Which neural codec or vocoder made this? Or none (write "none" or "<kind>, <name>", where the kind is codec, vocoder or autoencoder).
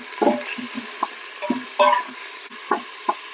none